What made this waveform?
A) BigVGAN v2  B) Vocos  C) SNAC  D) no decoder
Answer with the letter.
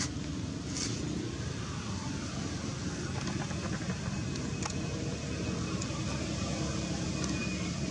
D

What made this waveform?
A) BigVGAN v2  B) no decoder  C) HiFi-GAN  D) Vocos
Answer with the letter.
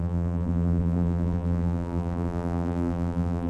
A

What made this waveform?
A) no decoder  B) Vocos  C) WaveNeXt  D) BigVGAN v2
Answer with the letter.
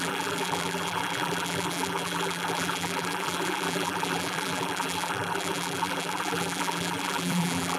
D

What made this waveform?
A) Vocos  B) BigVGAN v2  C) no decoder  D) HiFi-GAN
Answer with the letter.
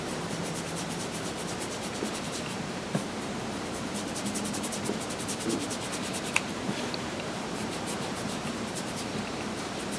B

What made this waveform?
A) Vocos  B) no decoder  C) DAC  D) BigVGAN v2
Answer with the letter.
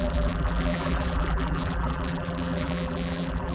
D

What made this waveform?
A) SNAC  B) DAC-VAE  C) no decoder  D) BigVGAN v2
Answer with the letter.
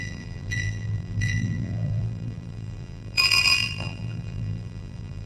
D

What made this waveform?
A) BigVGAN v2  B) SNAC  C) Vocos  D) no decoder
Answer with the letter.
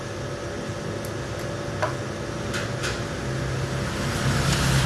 D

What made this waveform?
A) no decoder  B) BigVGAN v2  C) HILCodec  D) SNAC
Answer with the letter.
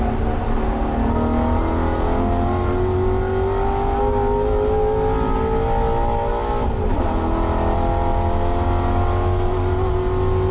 A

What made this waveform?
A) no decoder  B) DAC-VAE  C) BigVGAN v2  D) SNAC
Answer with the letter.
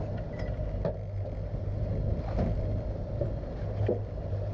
A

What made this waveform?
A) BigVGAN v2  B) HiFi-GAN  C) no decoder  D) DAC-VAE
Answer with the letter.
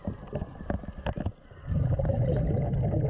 C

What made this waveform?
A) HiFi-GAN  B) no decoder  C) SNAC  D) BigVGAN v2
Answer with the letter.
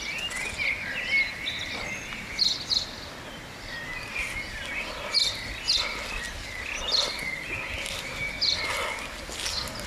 B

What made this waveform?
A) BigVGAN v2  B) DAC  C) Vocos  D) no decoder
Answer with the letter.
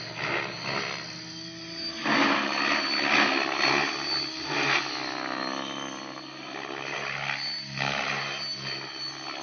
D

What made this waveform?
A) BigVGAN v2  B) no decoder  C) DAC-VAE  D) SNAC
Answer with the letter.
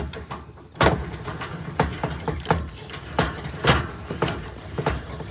A